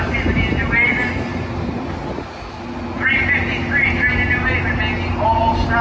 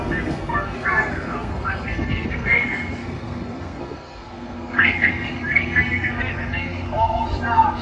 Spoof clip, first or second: second